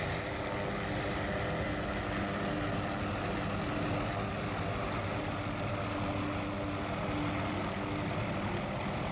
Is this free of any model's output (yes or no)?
yes